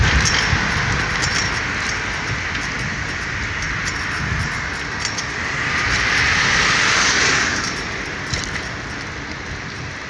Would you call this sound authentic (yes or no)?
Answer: yes